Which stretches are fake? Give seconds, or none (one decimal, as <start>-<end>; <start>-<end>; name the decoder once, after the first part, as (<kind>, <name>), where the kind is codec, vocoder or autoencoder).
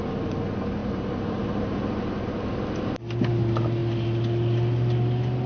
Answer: 0.8-2.3 (vocoder, BigVGAN v2)